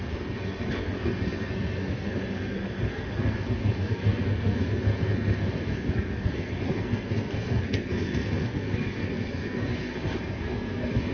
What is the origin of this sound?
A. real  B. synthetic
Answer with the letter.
B